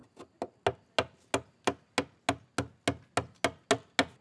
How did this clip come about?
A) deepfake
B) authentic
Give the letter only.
B